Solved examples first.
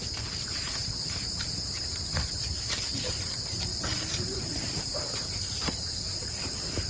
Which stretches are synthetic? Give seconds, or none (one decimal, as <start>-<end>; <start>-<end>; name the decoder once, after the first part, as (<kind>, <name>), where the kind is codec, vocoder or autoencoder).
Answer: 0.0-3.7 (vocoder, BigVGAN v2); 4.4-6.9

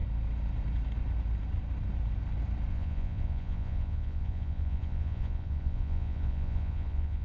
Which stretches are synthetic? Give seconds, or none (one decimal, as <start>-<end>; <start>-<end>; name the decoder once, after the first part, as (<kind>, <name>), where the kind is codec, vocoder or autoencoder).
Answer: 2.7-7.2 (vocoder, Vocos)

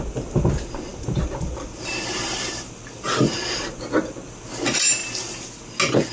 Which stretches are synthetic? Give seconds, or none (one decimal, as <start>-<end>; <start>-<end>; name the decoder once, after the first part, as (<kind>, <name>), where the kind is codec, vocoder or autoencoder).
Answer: 0.9-3.6 (vocoder, BigVGAN v2); 5.0-5.6